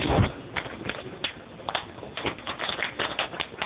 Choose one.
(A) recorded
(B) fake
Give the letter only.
A